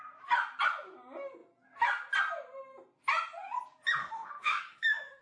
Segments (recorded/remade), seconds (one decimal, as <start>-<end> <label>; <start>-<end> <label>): 0.0-4.0 recorded; 4.0-5.2 remade